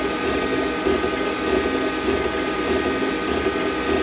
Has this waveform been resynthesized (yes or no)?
no